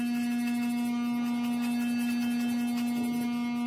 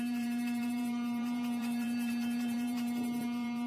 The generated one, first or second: second